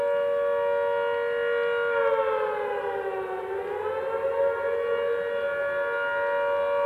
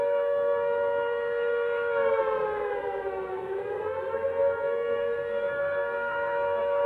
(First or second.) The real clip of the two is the first